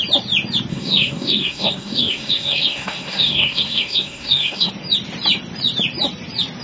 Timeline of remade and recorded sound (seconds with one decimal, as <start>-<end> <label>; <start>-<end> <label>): 0.0-0.7 recorded; 0.7-4.7 remade; 4.7-6.6 recorded